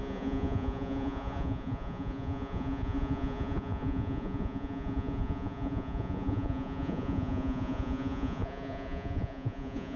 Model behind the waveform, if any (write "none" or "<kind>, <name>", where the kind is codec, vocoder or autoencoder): vocoder, Vocos